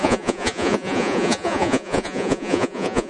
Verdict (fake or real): fake